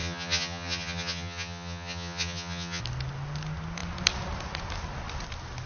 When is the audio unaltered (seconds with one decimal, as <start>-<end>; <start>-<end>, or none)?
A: 2.8-5.7